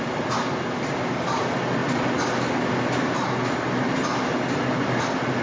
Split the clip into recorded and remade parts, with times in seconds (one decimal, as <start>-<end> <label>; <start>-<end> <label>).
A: 0.0-5.4 recorded